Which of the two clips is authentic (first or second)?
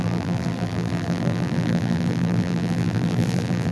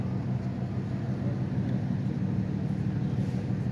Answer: second